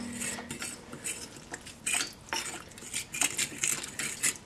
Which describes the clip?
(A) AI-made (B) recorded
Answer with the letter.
B